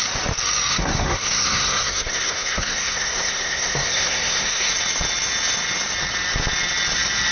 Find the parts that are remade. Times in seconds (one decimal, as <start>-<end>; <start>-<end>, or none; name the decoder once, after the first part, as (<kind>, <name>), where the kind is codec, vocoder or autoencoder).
0.7-4.7 (codec, SNAC)

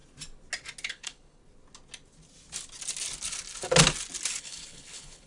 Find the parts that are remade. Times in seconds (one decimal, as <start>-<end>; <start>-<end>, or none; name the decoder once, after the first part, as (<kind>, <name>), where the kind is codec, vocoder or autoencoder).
0.9-1.4 (codec, HILCodec); 4.4-5.3

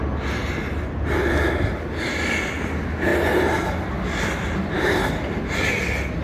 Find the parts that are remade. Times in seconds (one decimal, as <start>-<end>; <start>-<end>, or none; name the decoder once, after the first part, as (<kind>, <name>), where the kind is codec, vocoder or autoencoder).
none

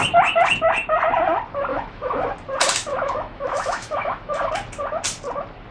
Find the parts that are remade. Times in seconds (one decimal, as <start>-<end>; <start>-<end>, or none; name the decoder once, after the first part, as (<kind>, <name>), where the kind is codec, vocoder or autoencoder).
1.7-2.3 (autoencoder, DAC-VAE); 2.9-4.5

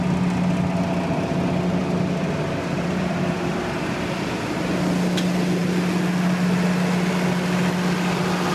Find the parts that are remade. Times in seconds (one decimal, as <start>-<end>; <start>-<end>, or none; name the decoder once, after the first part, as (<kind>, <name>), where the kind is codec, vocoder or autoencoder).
1.8-3.5 (vocoder, BigVGAN v2)

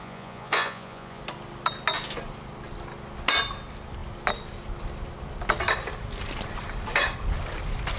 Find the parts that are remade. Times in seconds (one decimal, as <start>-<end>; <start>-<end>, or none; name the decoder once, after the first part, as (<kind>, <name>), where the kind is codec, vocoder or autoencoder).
0.0-1.2 (vocoder, Vocos)

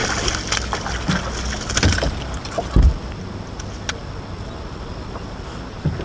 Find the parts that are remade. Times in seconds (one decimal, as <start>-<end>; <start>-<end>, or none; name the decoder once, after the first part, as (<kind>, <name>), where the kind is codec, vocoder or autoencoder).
none

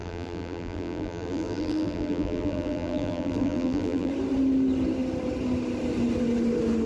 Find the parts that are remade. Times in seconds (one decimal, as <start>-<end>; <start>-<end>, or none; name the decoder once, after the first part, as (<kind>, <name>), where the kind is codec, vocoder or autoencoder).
0.0-4.1 (vocoder, BigVGAN v2)